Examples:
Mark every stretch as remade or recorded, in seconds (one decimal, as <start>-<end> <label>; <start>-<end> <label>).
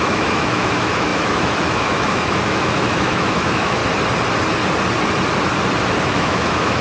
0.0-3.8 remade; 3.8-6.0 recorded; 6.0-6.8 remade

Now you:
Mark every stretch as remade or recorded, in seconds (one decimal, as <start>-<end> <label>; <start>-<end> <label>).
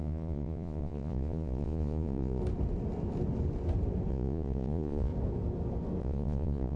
0.0-2.4 remade; 2.4-4.1 recorded; 4.1-5.1 remade; 5.1-6.0 recorded; 6.0-6.8 remade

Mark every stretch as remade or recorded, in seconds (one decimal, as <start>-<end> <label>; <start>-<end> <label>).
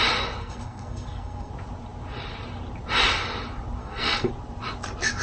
0.0-0.4 recorded; 0.4-1.5 remade; 1.5-3.8 recorded; 3.8-4.3 remade; 4.3-5.2 recorded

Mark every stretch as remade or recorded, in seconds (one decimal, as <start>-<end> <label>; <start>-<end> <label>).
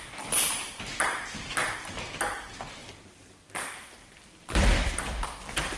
0.0-2.8 recorded; 2.8-5.8 remade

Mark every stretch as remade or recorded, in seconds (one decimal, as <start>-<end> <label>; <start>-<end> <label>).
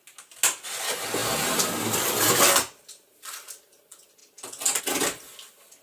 0.0-5.8 recorded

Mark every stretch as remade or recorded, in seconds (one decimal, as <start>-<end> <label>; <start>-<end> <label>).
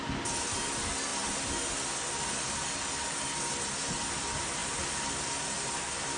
0.0-6.2 recorded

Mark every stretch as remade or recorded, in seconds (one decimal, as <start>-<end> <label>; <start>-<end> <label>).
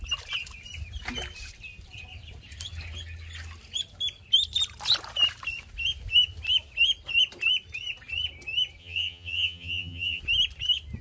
0.0-8.8 recorded; 8.8-10.2 remade; 10.2-11.0 recorded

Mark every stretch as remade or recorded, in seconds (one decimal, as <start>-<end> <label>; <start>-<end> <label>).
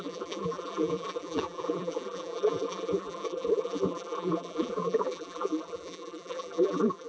0.0-7.1 remade